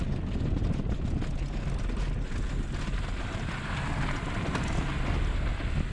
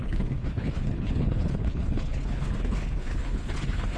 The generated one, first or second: second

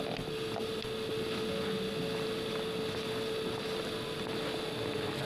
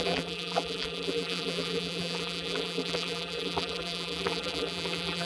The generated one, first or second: second